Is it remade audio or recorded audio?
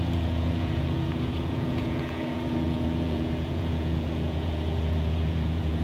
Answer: remade